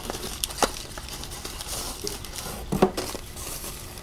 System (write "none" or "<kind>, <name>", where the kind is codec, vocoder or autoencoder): none